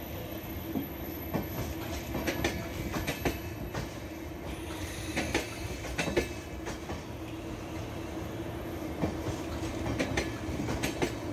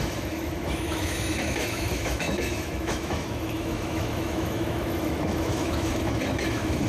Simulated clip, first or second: second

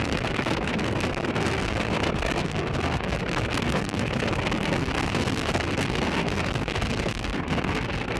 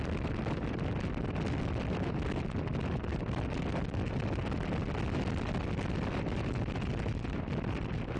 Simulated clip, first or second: first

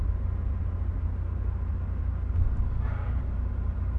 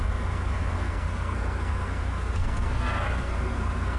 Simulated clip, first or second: second